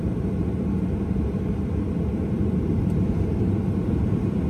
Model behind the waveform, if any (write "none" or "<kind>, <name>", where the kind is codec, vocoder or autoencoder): vocoder, BigVGAN v2